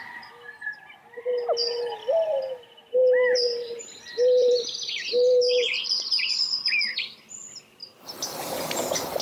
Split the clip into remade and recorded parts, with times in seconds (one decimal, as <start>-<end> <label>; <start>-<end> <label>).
0.0-3.0 recorded; 3.0-6.3 remade; 6.3-7.8 recorded; 7.8-8.6 remade; 8.6-9.2 recorded